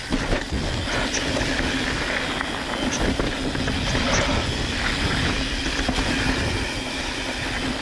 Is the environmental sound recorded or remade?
recorded